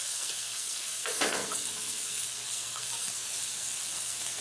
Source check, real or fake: fake